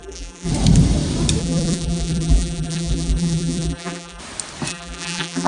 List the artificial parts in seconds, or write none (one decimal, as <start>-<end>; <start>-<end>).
0.0-0.5; 1.4-4.2; 4.7-5.5

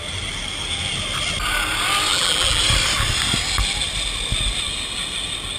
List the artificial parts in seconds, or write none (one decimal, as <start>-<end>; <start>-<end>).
2.1-2.6

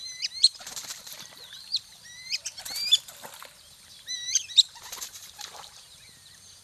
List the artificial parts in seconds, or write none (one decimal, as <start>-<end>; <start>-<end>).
0.0-2.4; 3.6-6.6

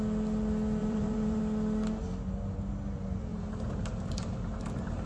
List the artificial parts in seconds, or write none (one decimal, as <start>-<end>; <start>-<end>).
0.8-1.4; 3.3-5.1

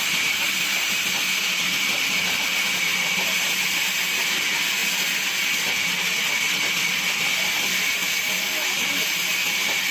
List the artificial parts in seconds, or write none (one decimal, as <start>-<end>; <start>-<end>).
none

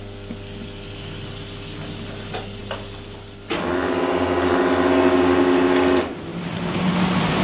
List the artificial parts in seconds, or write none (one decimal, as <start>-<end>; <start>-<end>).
6.3-6.9